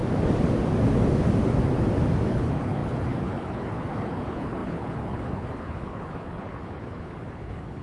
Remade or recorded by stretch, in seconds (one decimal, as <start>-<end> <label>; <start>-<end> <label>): 0.0-2.3 recorded; 2.3-7.8 remade